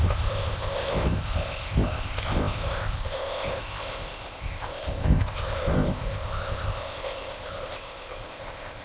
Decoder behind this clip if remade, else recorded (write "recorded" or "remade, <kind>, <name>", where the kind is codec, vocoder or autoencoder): remade, codec, ZipCodec